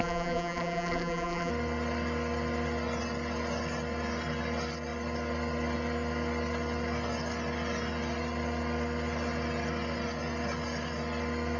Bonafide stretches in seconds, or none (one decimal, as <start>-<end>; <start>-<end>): 1.5-11.6